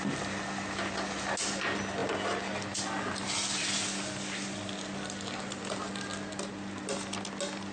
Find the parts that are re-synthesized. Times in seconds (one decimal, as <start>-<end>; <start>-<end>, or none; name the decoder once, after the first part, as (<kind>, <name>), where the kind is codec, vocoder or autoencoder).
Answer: none